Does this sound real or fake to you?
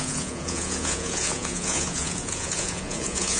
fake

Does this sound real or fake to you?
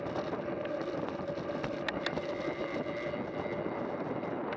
real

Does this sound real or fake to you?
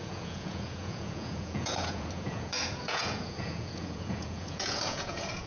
fake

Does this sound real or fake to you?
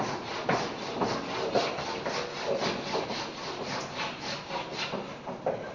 real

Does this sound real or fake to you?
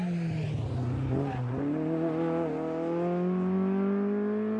real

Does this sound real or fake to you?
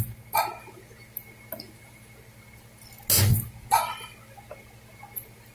real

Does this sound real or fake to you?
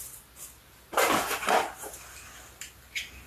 real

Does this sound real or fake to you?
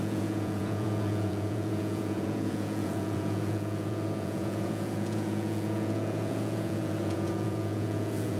fake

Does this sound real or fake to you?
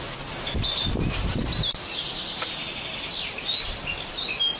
real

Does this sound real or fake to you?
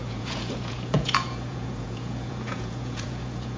fake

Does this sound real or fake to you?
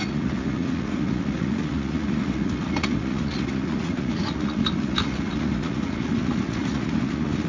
fake